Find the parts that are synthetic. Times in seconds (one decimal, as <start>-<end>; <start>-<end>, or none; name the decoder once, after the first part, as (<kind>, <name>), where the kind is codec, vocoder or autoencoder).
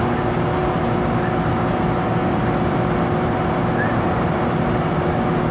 none